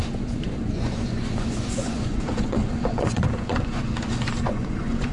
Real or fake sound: fake